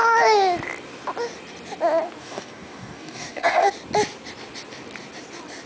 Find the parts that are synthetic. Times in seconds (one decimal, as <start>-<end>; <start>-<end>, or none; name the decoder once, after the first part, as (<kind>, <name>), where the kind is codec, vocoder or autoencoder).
2.2-3.7 (codec, DAC)